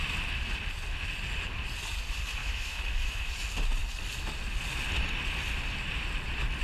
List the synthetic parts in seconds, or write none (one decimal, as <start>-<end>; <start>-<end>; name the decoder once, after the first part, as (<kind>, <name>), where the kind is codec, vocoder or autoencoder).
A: 2.4-3.4 (autoencoder, DAC-VAE)